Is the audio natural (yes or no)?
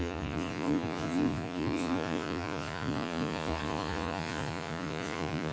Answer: no